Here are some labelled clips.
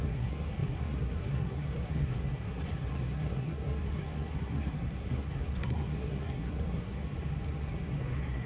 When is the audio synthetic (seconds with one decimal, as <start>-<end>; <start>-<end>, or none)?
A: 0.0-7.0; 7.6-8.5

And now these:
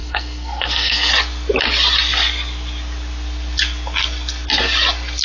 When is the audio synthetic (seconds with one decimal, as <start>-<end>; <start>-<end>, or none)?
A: 0.0-1.1

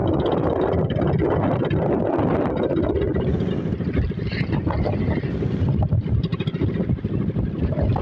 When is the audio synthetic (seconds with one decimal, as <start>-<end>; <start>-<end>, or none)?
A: none

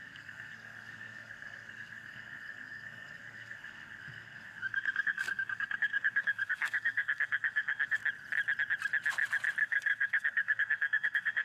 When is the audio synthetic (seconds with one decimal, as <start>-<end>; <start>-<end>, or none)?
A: 0.0-8.0; 9.6-11.4

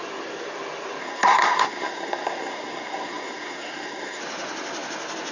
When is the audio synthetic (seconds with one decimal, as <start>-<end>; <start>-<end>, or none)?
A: 1.0-4.2

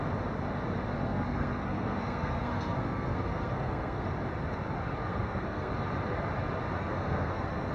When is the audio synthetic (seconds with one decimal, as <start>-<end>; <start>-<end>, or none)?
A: 0.9-4.1; 5.1-5.7; 6.8-7.7

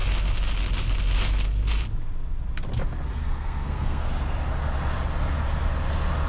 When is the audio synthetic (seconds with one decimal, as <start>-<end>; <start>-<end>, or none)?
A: 3.2-4.1